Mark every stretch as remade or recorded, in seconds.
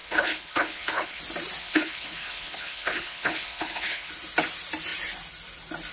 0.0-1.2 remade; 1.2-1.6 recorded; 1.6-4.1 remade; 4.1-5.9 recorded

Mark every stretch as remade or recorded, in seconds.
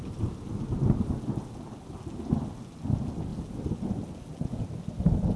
0.0-5.4 recorded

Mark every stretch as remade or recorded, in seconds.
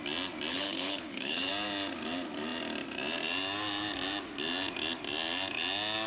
0.0-0.5 recorded; 0.5-1.5 remade; 1.5-6.1 recorded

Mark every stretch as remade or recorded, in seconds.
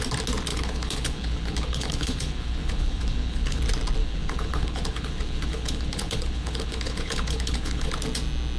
0.0-0.5 recorded; 0.5-3.6 remade; 3.6-4.0 recorded; 4.0-7.9 remade; 7.9-8.6 recorded